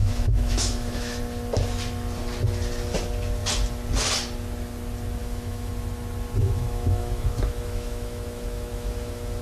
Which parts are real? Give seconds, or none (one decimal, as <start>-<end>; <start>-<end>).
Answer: 1.2-5.2; 5.7-6.4